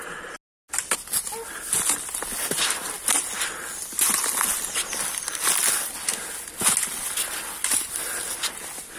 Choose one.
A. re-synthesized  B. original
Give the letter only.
B